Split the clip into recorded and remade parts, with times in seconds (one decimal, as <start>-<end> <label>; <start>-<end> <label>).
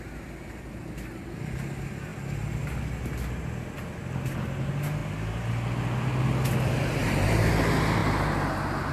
0.0-5.0 recorded; 5.0-5.5 remade; 5.5-7.0 recorded; 7.0-7.5 remade; 7.5-8.9 recorded